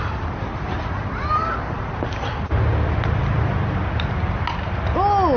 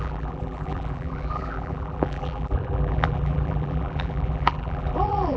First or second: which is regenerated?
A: second